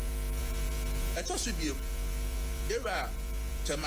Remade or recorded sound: remade